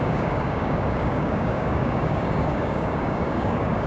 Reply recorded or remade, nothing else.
remade